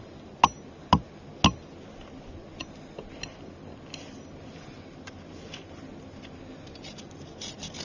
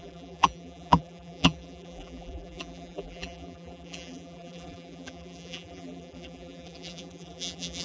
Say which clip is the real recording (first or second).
first